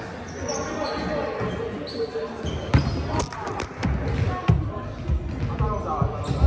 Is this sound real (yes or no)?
yes